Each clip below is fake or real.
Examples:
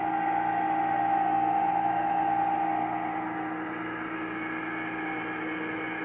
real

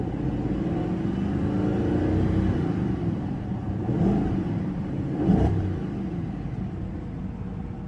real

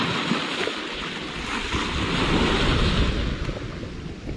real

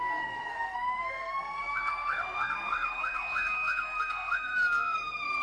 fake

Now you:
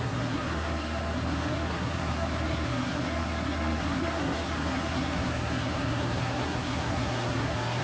fake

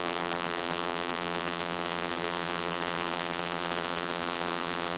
fake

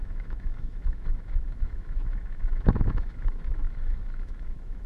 fake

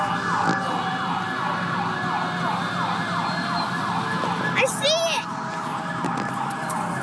real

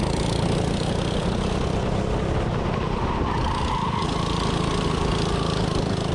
real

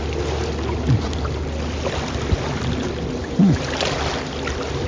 real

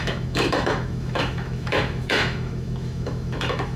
fake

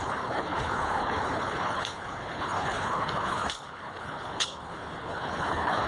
fake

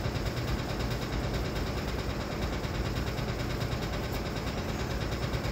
real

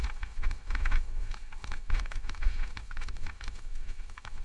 fake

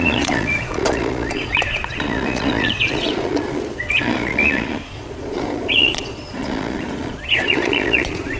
fake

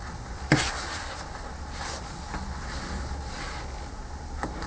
real